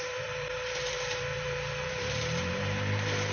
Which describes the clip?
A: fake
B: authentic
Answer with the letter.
A